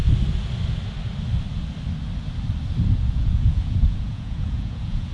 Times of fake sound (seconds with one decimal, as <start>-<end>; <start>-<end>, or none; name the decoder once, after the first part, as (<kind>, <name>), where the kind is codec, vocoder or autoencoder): 3.1-5.1 (vocoder, Vocos)